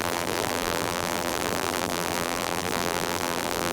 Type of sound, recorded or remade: remade